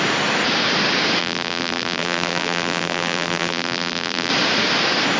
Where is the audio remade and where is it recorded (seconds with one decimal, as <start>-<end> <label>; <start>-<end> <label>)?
0.0-1.2 recorded; 1.2-4.3 remade; 4.3-5.2 recorded